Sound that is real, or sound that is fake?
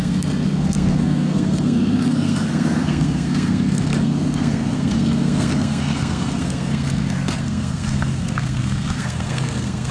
fake